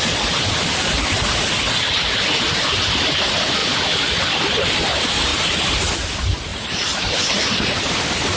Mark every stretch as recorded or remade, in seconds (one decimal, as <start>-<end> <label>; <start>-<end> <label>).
0.0-5.3 recorded; 5.3-5.9 remade; 5.9-6.5 recorded; 6.5-7.2 remade; 7.2-8.4 recorded